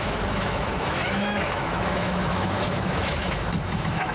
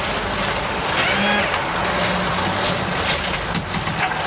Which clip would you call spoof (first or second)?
first